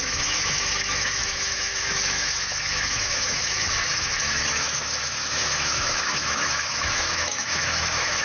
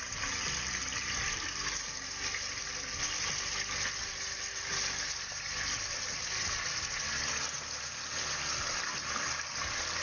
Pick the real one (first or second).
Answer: second